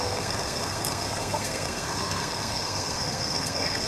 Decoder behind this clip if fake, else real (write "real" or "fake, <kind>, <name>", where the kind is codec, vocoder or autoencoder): fake, codec, SNAC